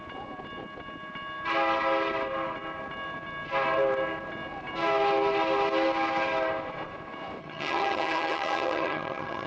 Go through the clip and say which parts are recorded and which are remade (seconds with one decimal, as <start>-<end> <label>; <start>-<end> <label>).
0.0-7.4 recorded; 7.4-9.5 remade